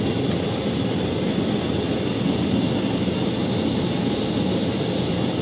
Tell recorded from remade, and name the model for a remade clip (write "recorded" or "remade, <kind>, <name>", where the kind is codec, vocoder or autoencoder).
recorded